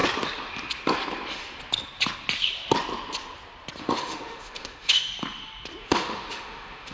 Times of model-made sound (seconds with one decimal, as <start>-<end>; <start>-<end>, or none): 3.8-5.1; 5.8-6.9